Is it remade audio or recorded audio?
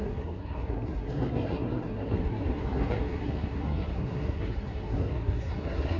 remade